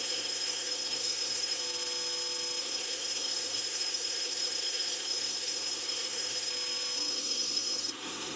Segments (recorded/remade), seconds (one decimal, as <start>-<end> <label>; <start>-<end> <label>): 0.0-1.6 remade; 1.6-2.6 recorded; 2.6-6.5 remade; 6.5-7.1 recorded; 7.1-8.4 remade